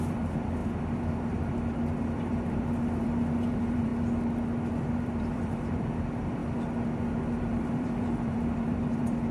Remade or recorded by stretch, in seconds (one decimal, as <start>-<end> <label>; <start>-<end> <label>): 0.0-3.9 remade; 3.9-4.7 recorded; 4.7-6.4 remade; 6.4-7.4 recorded; 7.4-9.3 remade